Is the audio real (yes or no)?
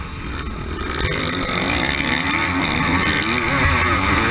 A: yes